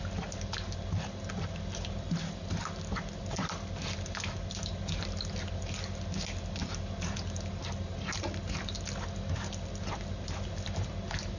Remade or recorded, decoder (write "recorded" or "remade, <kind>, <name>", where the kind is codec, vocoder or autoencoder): recorded